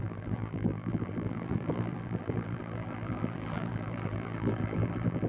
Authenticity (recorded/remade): remade